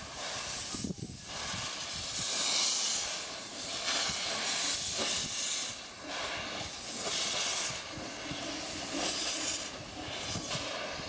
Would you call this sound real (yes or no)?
yes